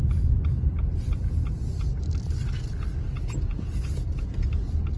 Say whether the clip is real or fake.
real